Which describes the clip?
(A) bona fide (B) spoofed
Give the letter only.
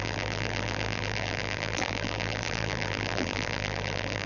B